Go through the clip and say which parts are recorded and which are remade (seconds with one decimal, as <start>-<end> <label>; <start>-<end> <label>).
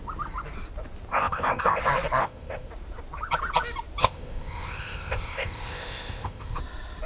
0.0-1.1 recorded; 1.1-1.8 remade; 1.8-2.2 recorded; 2.2-2.7 remade; 2.7-4.0 recorded; 4.0-6.6 remade; 6.6-7.1 recorded